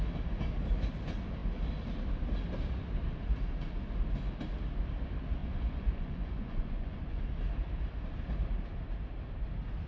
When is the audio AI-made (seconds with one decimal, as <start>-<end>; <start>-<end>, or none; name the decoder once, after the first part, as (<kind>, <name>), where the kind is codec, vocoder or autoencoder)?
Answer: 5.4-7.2 (vocoder, Vocos)